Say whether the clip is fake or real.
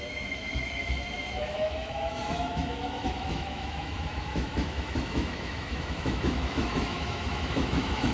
fake